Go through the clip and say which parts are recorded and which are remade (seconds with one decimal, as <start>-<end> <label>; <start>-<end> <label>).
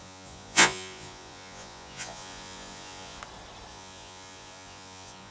0.0-3.2 remade; 3.2-3.7 recorded; 3.7-5.3 remade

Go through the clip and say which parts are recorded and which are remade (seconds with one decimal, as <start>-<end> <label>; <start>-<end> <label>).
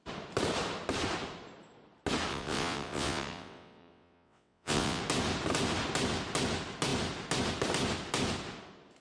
0.0-2.3 recorded; 2.3-5.0 remade; 5.0-9.0 recorded